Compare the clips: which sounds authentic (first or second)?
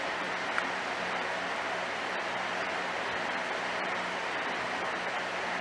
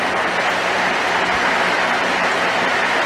second